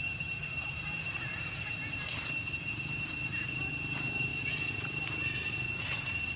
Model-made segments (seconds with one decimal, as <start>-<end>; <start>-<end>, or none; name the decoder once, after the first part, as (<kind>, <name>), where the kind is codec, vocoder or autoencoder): 0.0-4.3 (vocoder, BigVGAN v2); 5.7-6.4